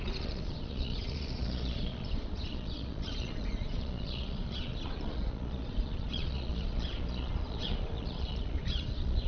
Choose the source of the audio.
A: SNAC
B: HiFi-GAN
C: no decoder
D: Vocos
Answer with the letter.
D